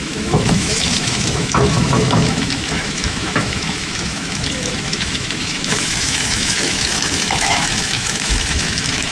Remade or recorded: remade